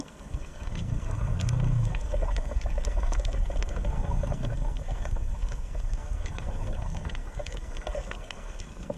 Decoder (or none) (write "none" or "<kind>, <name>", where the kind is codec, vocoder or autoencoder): codec, SNAC